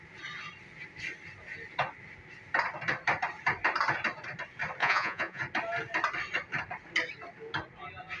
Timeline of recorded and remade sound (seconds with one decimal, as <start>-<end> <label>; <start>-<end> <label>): 0.0-4.8 recorded; 4.8-5.4 remade; 5.4-8.2 recorded